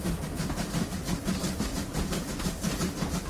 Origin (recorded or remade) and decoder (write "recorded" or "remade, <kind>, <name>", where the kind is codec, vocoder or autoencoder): recorded